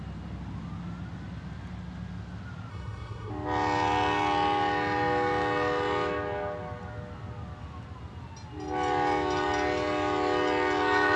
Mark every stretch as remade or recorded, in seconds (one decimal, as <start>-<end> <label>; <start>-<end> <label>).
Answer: 0.0-2.7 recorded; 2.7-3.3 remade; 3.3-11.2 recorded